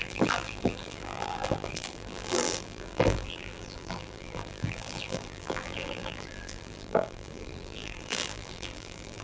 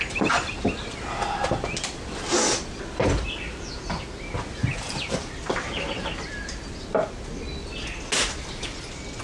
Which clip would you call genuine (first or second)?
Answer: second